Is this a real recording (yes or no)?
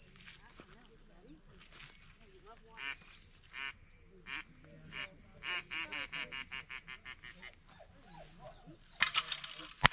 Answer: yes